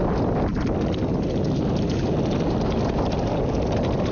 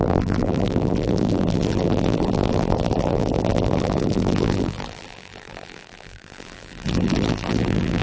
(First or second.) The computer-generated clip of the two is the second